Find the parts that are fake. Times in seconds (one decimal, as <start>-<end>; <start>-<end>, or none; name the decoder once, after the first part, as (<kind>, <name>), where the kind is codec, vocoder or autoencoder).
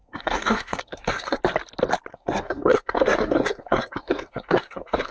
0.0-1.4 (codec, SNAC); 2.1-5.1